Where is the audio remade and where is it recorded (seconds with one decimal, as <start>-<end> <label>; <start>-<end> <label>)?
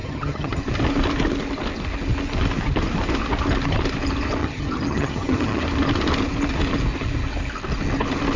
0.0-0.6 remade; 0.6-4.4 recorded; 4.4-5.6 remade; 5.6-8.4 recorded